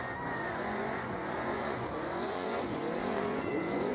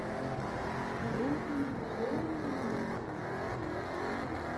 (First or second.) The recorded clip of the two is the second